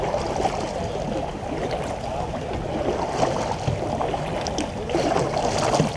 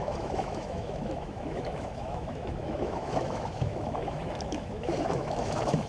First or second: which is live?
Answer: first